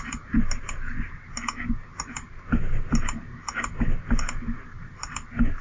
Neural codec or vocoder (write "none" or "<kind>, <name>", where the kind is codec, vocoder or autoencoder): none